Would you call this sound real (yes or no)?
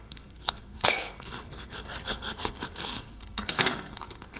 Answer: no